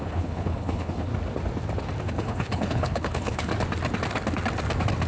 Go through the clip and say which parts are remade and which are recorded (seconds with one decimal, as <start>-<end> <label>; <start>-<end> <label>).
0.0-1.1 remade; 1.1-2.0 recorded; 2.0-3.5 remade; 3.5-5.1 recorded